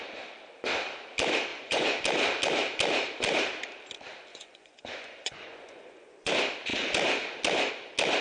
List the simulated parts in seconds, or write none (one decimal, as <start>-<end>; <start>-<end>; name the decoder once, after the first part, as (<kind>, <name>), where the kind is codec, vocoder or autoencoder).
1.5-2.0 (vocoder, Vocos); 4.3-6.3